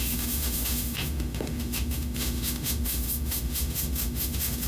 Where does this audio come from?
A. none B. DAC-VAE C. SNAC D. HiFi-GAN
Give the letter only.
B